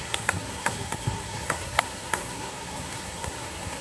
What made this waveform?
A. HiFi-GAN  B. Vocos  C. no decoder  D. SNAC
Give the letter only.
D